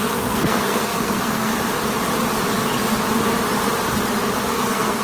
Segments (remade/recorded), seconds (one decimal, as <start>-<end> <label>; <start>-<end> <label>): 0.0-1.5 remade; 1.5-4.5 recorded; 4.5-5.0 remade